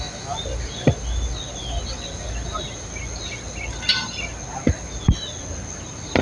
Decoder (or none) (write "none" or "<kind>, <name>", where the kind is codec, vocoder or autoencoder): none